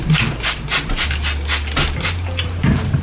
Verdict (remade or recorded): recorded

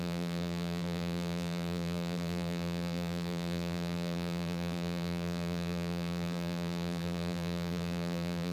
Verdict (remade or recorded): remade